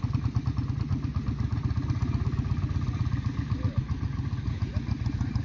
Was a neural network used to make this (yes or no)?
no